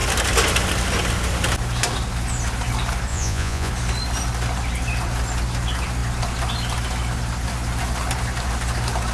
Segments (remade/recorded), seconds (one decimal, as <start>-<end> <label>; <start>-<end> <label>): 0.0-3.1 recorded; 3.1-3.7 remade; 3.7-9.1 recorded